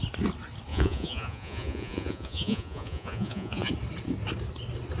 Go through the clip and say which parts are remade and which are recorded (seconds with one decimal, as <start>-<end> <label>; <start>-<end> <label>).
0.0-0.7 recorded; 0.7-3.7 remade; 3.7-5.0 recorded